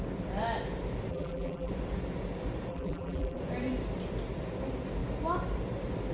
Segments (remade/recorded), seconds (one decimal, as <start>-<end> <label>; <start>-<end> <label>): 0.0-1.1 recorded; 1.1-1.7 remade; 1.7-2.7 recorded; 2.7-3.4 remade; 3.4-6.1 recorded